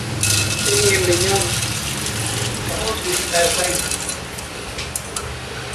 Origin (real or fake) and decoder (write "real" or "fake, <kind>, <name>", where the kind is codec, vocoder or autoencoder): real